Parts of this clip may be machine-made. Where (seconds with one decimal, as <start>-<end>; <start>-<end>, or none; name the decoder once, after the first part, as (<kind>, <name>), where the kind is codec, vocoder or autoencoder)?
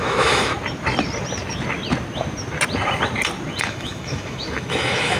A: 0.0-0.5 (autoencoder, DAC-VAE); 3.6-5.2